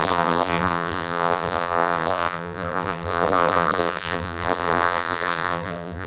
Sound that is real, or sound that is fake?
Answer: fake